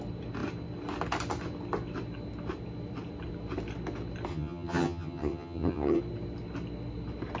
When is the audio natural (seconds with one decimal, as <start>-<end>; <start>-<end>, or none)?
0.0-4.3; 6.0-7.4